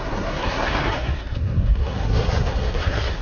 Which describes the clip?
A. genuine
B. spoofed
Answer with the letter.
B